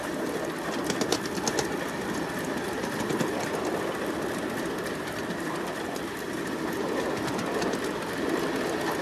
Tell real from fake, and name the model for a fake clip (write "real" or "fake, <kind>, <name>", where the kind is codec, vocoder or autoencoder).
real